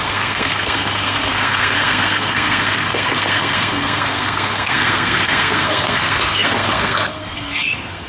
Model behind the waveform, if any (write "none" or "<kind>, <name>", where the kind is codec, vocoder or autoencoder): codec, SNAC